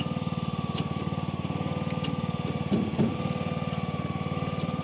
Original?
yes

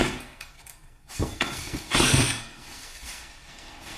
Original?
no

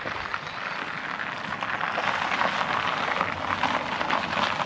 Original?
yes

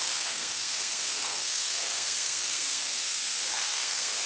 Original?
no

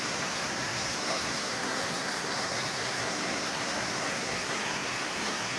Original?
no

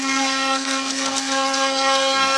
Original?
no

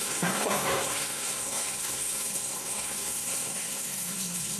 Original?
no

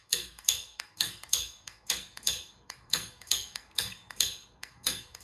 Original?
no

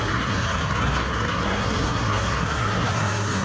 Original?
no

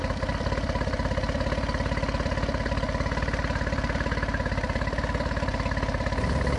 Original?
yes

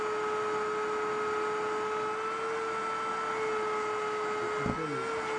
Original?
yes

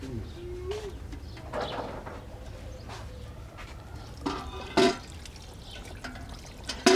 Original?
yes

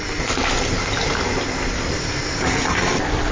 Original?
yes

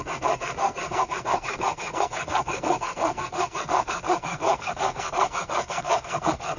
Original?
no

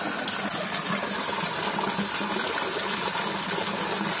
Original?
yes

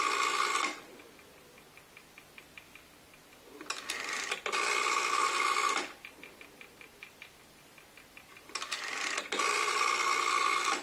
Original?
yes